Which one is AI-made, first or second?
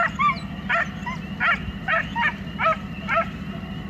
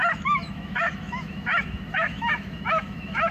second